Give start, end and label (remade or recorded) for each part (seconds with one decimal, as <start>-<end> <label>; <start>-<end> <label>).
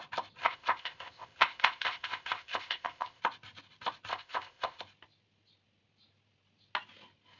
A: 0.0-0.4 recorded; 0.4-3.2 remade; 3.2-4.1 recorded; 4.1-4.8 remade; 4.8-7.4 recorded